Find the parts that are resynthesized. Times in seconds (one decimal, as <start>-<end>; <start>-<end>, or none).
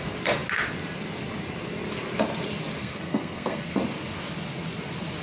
2.8-3.8